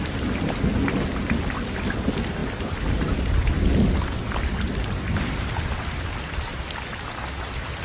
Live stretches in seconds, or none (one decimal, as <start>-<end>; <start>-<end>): 0.0-2.4; 6.2-7.8